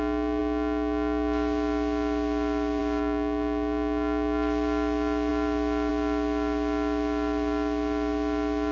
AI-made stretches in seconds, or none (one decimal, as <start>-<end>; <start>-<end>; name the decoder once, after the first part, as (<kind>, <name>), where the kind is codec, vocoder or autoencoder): none